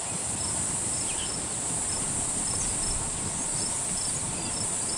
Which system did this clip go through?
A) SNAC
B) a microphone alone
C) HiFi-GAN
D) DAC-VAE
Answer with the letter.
B